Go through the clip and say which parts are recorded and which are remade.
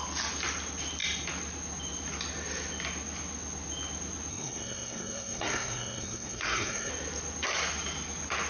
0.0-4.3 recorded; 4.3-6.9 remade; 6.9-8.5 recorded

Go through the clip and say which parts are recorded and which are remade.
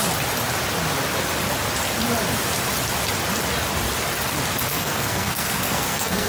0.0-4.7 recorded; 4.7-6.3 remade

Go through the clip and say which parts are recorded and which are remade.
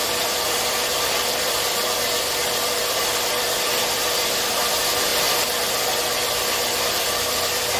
0.0-5.1 remade; 5.1-6.9 recorded; 6.9-7.8 remade